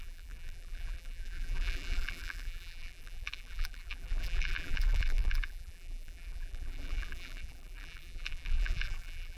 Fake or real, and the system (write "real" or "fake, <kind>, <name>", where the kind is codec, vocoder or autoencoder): fake, vocoder, BigVGAN v2